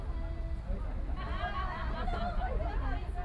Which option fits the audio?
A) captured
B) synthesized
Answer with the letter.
A